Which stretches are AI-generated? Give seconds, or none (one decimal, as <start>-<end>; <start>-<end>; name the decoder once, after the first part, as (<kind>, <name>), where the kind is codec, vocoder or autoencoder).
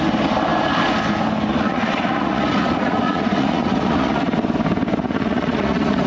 1.5-4.3 (vocoder, Vocos); 5.0-6.1